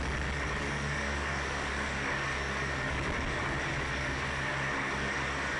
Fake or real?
fake